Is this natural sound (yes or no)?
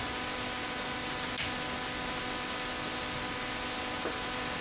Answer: yes